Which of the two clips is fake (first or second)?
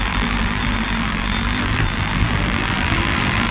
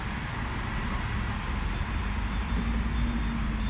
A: first